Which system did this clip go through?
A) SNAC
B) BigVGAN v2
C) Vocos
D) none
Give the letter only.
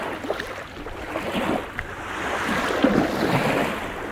D